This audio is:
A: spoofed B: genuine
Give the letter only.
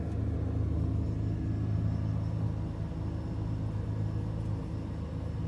B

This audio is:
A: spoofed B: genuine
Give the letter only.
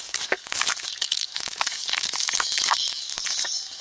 A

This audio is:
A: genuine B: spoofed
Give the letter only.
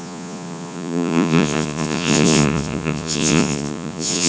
B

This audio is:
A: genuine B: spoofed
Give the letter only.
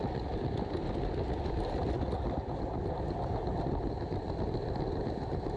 A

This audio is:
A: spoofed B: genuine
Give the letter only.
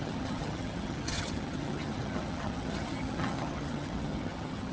A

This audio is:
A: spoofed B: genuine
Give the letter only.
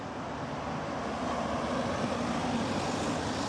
B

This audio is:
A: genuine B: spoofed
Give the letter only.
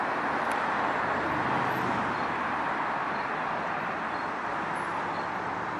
B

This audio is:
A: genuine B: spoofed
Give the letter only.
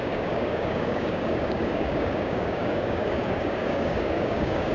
B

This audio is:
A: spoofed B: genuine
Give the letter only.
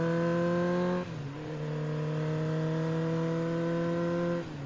B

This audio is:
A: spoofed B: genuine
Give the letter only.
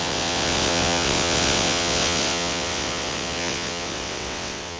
A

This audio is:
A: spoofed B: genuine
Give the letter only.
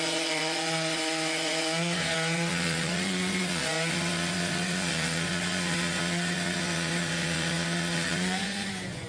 A